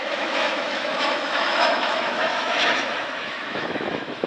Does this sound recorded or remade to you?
remade